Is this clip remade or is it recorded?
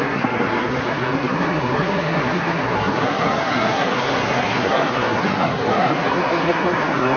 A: remade